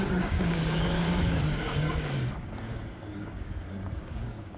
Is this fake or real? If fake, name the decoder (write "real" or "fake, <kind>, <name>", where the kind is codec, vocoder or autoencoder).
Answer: fake, codec, DAC